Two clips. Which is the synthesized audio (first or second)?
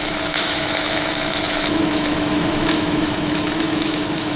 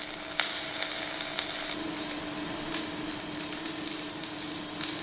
first